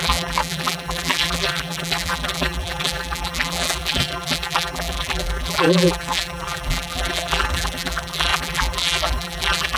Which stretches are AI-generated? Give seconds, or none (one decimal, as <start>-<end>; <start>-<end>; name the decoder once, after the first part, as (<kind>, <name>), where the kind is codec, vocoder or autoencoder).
0.0-9.8 (vocoder, BigVGAN v2)